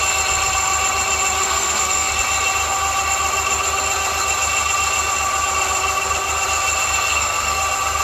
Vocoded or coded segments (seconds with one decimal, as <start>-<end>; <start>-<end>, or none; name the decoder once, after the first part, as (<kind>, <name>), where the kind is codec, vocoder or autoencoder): 1.4-2.1 (codec, SNAC); 7.1-7.6